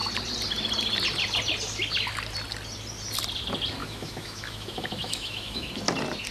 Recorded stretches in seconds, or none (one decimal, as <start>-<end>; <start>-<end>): 0.0-3.8; 5.7-6.3